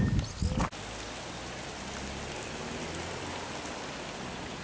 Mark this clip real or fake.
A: real